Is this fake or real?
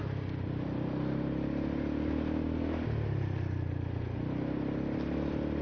real